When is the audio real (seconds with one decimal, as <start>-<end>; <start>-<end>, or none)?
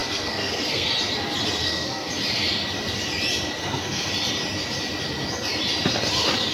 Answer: 0.9-1.6; 2.1-3.6; 4.1-6.5